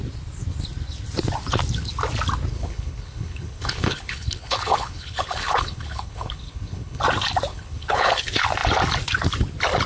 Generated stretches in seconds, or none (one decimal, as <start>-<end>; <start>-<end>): 2.5-7.0; 7.5-8.2